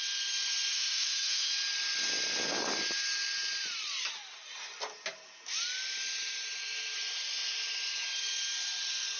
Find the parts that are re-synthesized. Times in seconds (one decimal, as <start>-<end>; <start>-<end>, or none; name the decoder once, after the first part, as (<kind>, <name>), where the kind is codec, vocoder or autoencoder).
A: 0.7-1.5 (autoencoder, DAC-VAE)